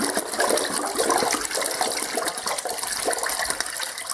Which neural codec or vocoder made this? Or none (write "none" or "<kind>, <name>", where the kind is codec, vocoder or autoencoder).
none